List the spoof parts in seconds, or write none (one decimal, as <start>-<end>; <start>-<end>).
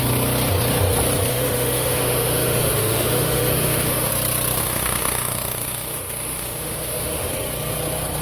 1.3-4.1; 4.6-7.3